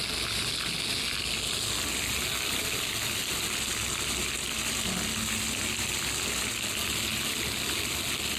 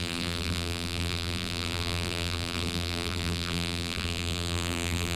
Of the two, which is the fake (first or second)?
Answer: second